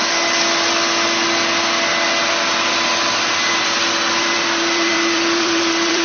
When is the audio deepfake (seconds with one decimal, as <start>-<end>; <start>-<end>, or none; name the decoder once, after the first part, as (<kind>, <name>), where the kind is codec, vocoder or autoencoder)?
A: 3.5-6.0 (vocoder, BigVGAN v2)